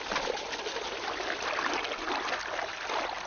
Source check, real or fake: real